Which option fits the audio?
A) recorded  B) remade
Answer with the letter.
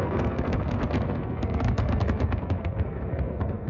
B